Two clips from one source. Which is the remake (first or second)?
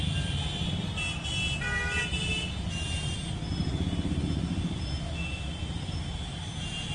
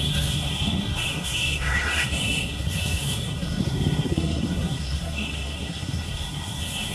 second